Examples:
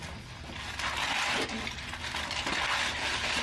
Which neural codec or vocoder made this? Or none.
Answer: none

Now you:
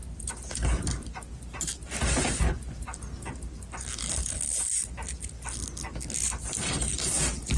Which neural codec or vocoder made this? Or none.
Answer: none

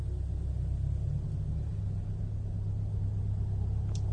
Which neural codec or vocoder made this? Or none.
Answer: none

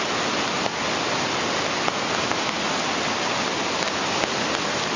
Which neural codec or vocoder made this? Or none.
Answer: none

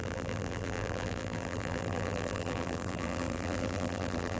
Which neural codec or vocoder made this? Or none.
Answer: vocoder, BigVGAN v2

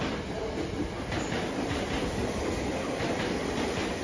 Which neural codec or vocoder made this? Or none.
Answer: none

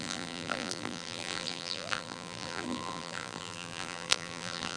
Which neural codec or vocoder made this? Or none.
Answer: vocoder, BigVGAN v2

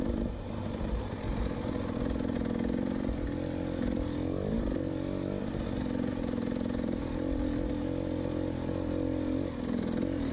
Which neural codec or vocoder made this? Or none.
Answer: none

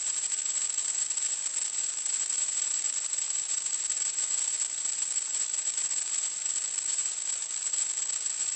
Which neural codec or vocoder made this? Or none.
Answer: vocoder, BigVGAN v2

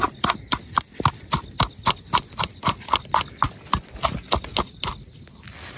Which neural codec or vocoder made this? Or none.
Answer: none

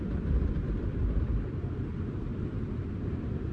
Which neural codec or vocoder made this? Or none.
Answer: vocoder, BigVGAN v2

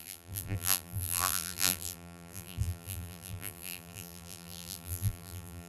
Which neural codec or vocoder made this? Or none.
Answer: vocoder, BigVGAN v2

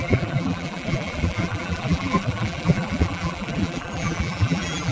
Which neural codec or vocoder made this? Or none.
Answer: vocoder, BigVGAN v2